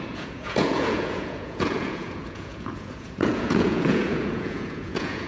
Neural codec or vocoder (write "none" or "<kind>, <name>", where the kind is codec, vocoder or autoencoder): vocoder, Vocos